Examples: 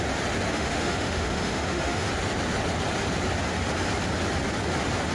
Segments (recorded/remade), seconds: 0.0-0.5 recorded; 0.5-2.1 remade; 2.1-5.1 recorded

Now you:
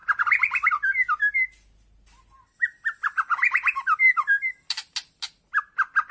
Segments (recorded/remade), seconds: 0.0-6.1 recorded

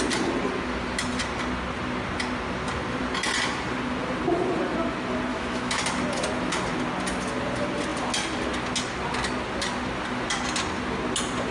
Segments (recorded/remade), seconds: 0.0-5.3 recorded; 5.3-5.8 remade; 5.8-11.5 recorded

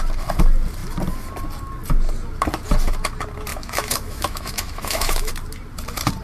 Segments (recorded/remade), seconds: 0.0-3.5 recorded; 3.5-5.3 remade; 5.3-6.2 recorded

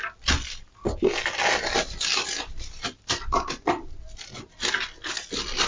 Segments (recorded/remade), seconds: 0.0-5.7 recorded

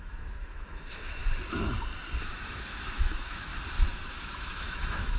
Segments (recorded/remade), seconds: 0.0-1.2 remade; 1.2-2.2 recorded; 2.2-3.5 remade; 3.5-4.1 recorded; 4.1-5.2 remade

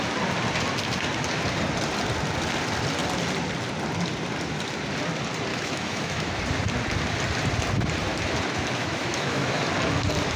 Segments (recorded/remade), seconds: 0.0-5.5 recorded; 5.5-6.4 remade; 6.4-8.8 recorded; 8.8-9.6 remade; 9.6-10.4 recorded

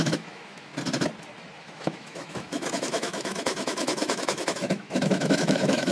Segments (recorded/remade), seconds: 0.0-0.7 remade; 0.7-1.6 recorded; 1.6-5.9 remade